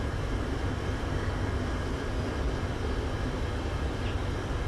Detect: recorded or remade recorded